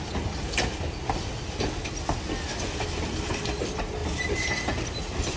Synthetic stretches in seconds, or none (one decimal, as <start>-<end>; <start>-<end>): none